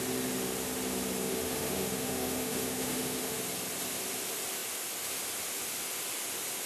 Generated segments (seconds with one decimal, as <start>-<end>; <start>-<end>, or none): 1.2-3.4